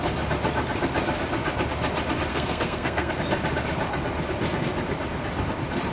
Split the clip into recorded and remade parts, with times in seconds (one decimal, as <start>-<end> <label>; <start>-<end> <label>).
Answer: 0.0-2.3 recorded; 2.3-3.1 remade; 3.1-5.9 recorded